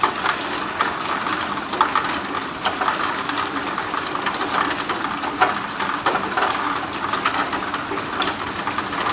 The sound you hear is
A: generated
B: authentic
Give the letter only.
B